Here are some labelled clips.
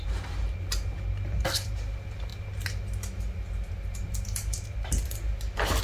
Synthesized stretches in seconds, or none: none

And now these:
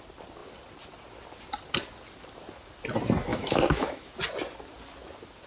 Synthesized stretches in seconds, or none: 3.3-4.1 (autoencoder, DAC-VAE)

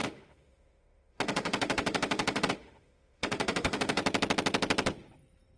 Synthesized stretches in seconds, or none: 0.0-4.0 (autoencoder, DAC-VAE)

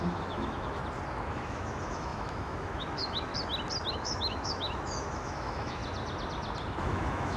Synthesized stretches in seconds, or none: 0.0-0.8 (autoencoder, DAC-VAE); 1.3-3.3; 3.9-5.8; 6.8-7.4

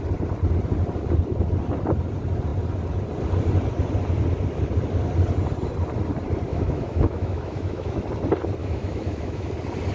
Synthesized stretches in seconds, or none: 6.5-8.0 (autoencoder, DAC-VAE); 8.6-9.5